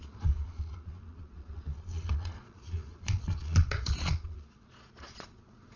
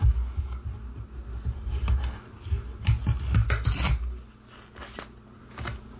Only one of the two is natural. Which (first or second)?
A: second